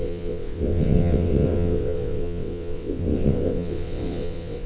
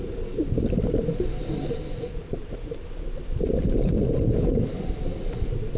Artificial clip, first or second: first